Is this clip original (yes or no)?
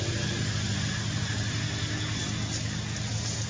yes